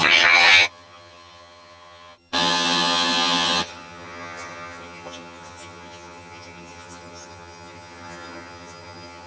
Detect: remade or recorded remade